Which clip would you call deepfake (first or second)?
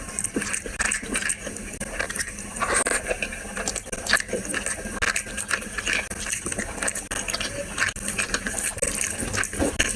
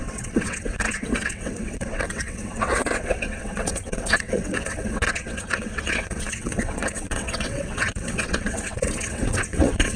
second